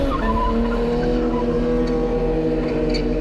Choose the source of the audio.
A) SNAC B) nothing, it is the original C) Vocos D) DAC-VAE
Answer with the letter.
B